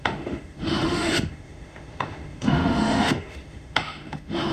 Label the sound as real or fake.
fake